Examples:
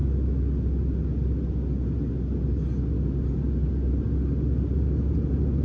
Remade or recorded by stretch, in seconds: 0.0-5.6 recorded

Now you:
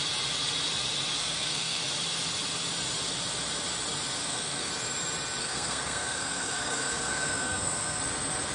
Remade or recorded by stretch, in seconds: 0.0-1.2 recorded; 1.2-1.8 remade; 1.8-4.2 recorded; 4.2-4.7 remade; 4.7-5.4 recorded; 5.4-8.0 remade; 8.0-8.5 recorded

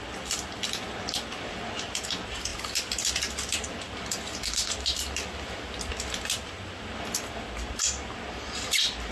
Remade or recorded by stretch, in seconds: 0.0-9.1 recorded